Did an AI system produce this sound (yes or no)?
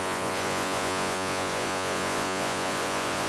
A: yes